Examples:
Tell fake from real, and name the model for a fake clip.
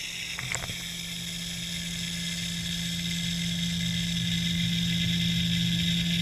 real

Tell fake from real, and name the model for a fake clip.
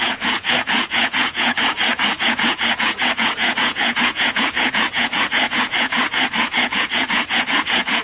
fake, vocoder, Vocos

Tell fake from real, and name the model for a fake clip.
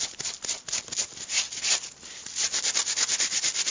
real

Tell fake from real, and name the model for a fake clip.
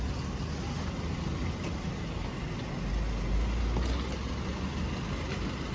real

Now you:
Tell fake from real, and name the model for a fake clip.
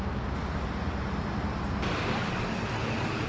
real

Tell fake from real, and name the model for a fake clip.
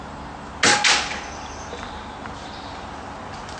real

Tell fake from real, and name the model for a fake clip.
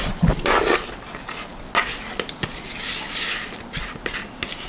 real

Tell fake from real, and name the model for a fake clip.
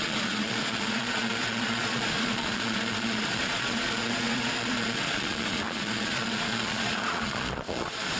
fake, vocoder, Vocos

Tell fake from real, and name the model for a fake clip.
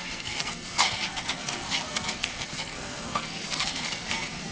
fake, codec, SNAC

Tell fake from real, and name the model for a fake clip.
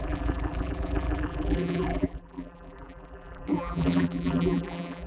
fake, vocoder, BigVGAN v2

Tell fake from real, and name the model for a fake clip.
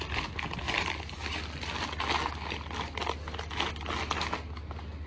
real